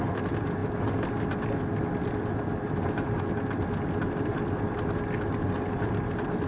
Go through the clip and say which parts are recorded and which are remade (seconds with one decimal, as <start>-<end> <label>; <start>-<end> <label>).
0.0-6.5 recorded